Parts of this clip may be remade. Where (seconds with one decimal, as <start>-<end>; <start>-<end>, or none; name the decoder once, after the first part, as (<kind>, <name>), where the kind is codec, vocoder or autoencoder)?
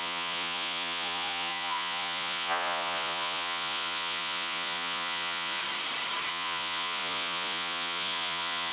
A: 0.0-5.6 (vocoder, Vocos); 6.3-8.7